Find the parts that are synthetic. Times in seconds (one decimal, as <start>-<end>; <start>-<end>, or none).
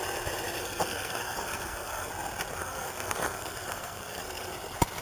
0.6-2.1; 2.6-4.5